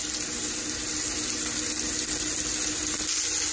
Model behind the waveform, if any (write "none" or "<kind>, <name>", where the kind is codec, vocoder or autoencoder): none